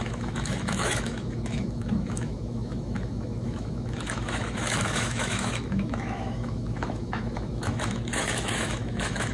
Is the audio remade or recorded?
remade